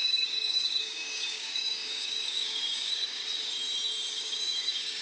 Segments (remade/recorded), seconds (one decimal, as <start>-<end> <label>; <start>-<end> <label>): 0.0-3.2 remade; 3.2-4.1 recorded; 4.1-5.0 remade